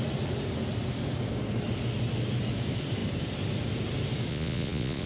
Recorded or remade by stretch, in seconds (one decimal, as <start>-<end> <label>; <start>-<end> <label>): 0.0-4.3 recorded; 4.3-5.1 remade